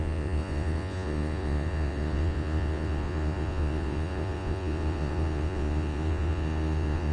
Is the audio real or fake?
fake